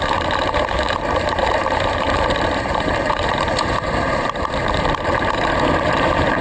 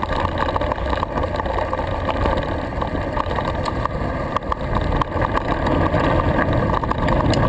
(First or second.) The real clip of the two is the second